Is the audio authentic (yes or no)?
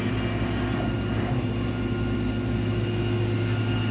yes